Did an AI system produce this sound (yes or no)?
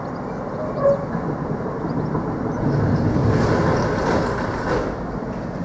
no